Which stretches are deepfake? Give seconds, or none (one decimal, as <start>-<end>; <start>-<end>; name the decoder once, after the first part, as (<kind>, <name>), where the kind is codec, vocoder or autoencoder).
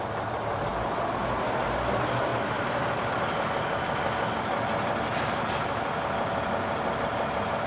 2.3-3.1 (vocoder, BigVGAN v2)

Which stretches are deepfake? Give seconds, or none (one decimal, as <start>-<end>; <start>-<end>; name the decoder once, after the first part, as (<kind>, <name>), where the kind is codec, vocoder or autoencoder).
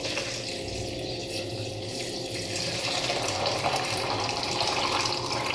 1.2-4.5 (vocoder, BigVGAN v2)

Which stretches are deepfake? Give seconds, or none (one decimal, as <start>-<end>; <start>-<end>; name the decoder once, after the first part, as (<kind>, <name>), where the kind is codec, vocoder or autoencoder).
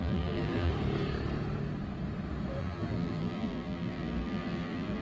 0.0-0.7 (vocoder, BigVGAN v2); 2.6-5.0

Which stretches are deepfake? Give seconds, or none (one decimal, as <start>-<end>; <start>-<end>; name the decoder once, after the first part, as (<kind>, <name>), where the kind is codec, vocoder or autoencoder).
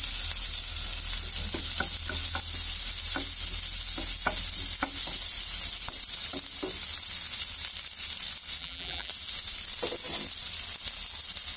8.6-9.1 (vocoder, BigVGAN v2)